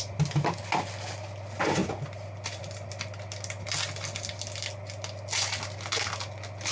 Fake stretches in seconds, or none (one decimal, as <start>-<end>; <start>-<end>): none